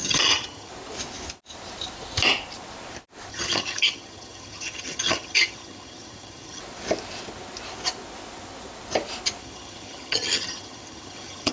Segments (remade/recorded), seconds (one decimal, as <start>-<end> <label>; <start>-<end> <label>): 0.0-0.7 remade; 0.7-3.3 recorded; 3.3-6.6 remade; 6.6-9.4 recorded; 9.4-11.5 remade